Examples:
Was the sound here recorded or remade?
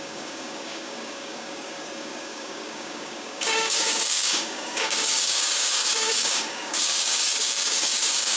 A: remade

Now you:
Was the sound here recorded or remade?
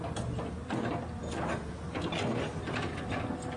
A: recorded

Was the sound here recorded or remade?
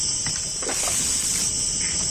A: recorded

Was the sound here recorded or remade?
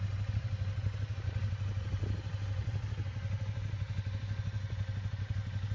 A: recorded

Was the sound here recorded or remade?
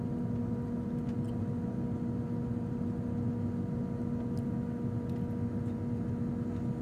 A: recorded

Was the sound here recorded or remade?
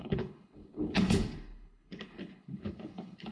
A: remade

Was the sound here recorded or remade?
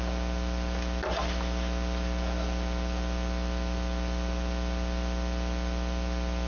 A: recorded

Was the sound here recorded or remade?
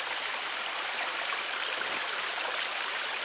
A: remade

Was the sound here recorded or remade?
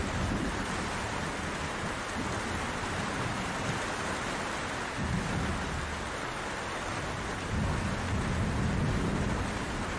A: recorded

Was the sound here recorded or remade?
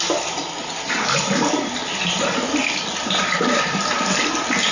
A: recorded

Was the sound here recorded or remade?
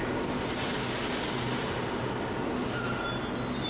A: recorded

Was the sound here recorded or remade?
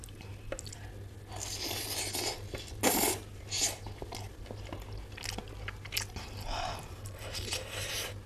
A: recorded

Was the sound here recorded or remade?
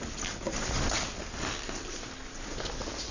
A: recorded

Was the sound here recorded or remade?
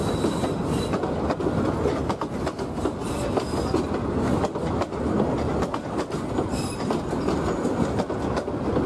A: recorded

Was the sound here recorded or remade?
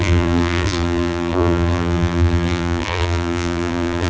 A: remade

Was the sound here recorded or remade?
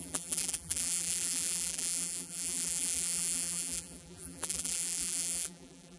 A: remade